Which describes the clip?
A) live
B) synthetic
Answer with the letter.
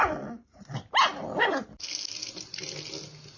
A